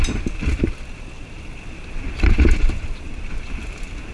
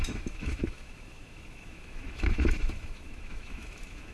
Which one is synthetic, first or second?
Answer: second